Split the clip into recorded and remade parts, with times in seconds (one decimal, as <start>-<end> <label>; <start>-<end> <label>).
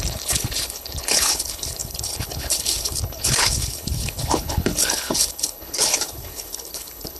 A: 0.0-7.2 remade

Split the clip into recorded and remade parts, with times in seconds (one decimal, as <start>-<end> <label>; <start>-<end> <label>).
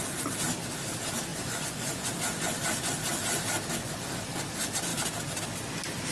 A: 0.0-1.3 recorded; 1.3-2.1 remade; 2.1-3.8 recorded; 3.8-4.4 remade; 4.4-6.1 recorded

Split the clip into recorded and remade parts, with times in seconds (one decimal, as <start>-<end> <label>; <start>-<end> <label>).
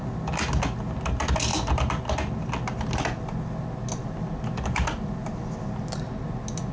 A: 0.0-6.7 recorded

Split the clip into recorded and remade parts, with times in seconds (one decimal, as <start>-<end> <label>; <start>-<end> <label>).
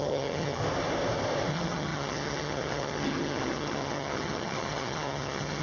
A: 0.0-0.6 remade; 0.6-1.5 recorded; 1.5-5.6 remade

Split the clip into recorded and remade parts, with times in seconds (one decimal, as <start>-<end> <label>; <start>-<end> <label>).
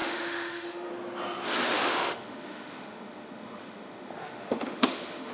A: 0.0-0.9 remade; 0.9-1.8 recorded; 1.8-5.3 remade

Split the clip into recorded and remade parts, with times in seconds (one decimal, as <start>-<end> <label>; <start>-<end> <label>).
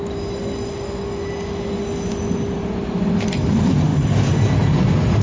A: 0.0-5.2 recorded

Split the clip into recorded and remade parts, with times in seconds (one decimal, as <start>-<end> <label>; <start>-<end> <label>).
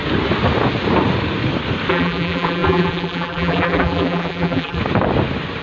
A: 0.0-1.9 recorded; 1.9-4.8 remade; 4.8-5.6 recorded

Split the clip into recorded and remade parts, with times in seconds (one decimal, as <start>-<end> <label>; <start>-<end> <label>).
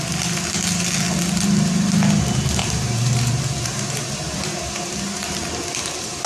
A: 0.0-2.6 recorded; 2.6-3.3 remade; 3.3-3.7 recorded; 3.7-5.4 remade; 5.4-6.3 recorded